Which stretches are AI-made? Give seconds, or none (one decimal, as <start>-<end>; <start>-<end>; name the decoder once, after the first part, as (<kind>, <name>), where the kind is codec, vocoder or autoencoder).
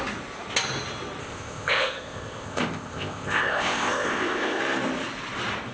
1.2-4.6 (codec, ZipCodec)